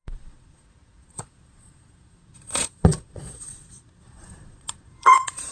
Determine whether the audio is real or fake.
fake